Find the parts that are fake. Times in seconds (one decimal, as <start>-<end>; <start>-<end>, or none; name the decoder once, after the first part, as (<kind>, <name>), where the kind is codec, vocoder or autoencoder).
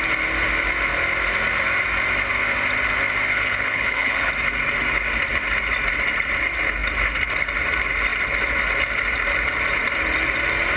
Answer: 3.3-4.3 (codec, HILCodec)